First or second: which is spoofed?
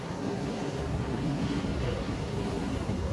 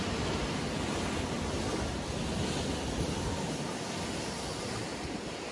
first